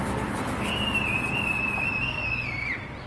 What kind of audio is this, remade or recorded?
remade